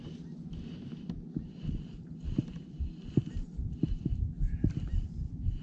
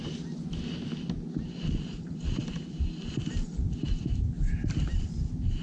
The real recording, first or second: second